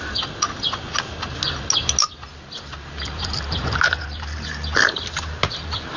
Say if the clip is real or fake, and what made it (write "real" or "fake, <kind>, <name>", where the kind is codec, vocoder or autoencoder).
real